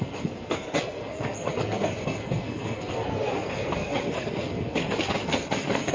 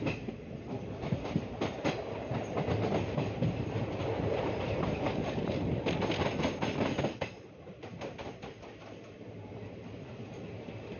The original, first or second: second